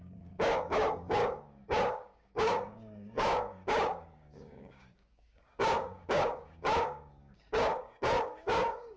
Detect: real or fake fake